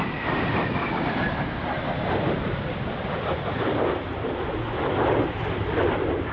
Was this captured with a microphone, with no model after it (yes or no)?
yes